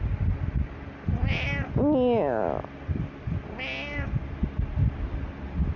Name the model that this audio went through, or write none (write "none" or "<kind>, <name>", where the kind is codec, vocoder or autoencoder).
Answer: none